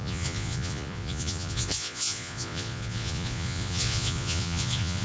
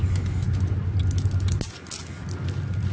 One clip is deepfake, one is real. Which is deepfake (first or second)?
first